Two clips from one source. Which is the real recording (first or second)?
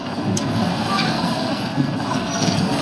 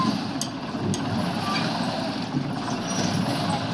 second